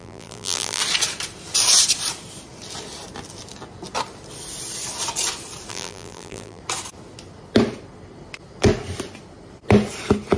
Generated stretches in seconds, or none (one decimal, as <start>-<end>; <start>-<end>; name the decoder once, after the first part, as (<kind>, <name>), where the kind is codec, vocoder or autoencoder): 0.0-0.8 (vocoder, BigVGAN v2); 5.7-6.6